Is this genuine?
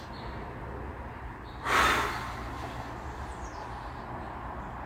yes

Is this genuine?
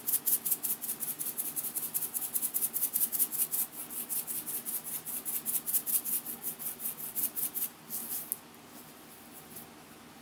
yes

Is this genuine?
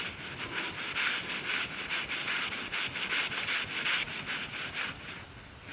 yes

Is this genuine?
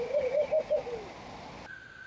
yes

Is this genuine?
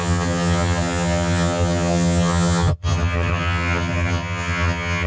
no